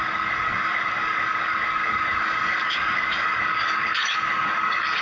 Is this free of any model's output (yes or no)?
no